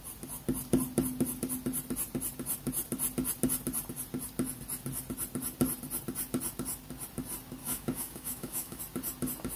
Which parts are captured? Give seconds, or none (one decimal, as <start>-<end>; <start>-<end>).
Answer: 0.0-7.6; 8.8-9.6